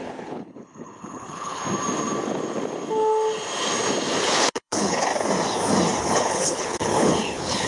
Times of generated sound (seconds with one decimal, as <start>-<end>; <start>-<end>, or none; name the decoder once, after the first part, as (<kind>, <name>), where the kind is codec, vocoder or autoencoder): 0.0-1.6 (codec, HILCodec); 4.2-5.1; 6.0-7.7